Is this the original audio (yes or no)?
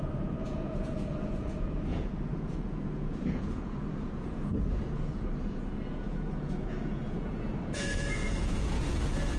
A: no